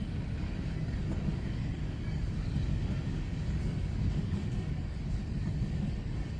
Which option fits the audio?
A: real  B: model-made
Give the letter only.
B